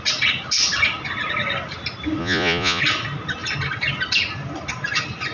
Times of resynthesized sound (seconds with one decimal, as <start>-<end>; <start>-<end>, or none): 2.2-2.8